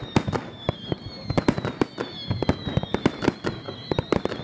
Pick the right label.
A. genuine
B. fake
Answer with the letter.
A